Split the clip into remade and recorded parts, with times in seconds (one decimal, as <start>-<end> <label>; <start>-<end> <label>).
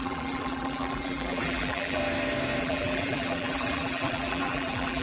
0.0-2.0 remade; 2.0-2.6 recorded; 2.6-5.0 remade